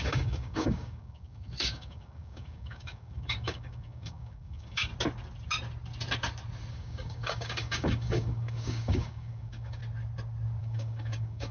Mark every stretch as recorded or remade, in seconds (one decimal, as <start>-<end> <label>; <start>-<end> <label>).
0.0-4.9 remade; 4.9-6.7 recorded; 6.7-9.8 remade; 9.8-10.6 recorded; 10.6-11.5 remade